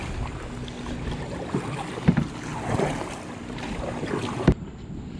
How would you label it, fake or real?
real